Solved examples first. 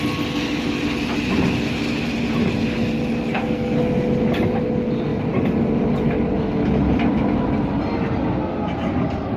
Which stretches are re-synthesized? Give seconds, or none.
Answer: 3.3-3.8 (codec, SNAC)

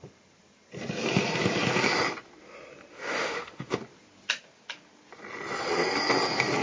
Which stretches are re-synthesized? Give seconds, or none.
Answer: 2.9-3.8 (autoencoder, DAC-VAE)

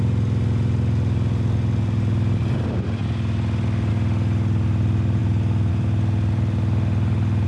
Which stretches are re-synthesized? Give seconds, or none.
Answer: none

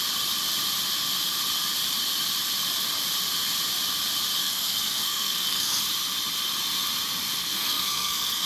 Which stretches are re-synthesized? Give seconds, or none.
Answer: 4.4-5.8 (codec, SNAC); 7.4-8.5